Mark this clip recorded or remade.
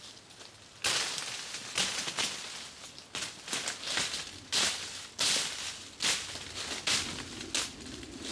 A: recorded